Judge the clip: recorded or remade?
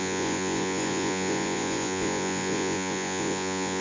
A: remade